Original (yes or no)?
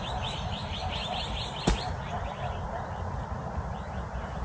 yes